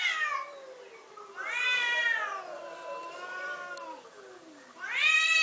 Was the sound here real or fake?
real